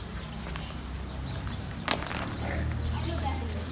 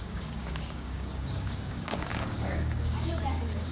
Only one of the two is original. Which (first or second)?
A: first